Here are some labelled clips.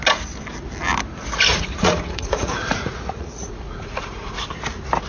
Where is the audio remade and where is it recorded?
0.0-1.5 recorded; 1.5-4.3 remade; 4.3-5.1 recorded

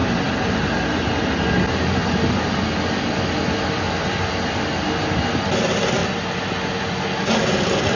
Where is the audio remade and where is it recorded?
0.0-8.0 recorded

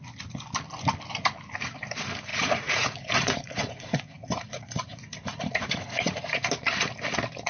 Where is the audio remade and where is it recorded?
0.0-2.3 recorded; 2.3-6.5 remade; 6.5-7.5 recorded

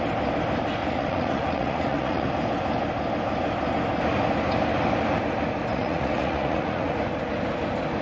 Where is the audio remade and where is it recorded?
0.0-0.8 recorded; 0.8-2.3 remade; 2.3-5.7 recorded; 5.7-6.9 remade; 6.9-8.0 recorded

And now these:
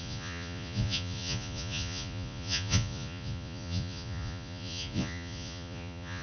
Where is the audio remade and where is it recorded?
0.0-6.2 remade